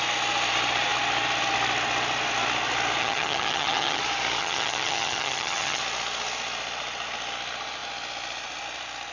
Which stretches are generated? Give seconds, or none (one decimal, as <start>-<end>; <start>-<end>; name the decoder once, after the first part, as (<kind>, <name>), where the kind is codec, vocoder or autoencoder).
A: 3.0-4.0 (vocoder, HiFi-GAN); 4.4-5.8